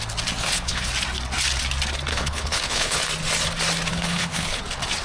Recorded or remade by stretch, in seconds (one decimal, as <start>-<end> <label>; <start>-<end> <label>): 0.0-0.4 recorded; 0.4-0.9 remade; 0.9-2.1 recorded; 2.1-3.0 remade; 3.0-3.9 recorded; 3.9-4.6 remade; 4.6-5.0 recorded